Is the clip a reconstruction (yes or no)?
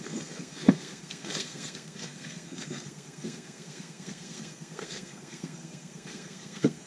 yes